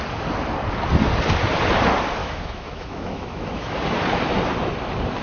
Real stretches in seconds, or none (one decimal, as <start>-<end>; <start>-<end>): 0.0-2.2; 3.8-5.2